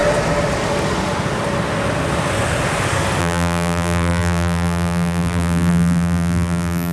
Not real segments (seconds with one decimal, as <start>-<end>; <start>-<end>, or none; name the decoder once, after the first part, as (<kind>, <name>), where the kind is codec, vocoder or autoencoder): 3.2-6.9 (vocoder, BigVGAN v2)